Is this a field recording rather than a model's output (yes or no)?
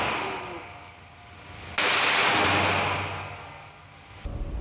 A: yes